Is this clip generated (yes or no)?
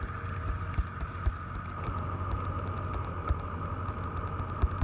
no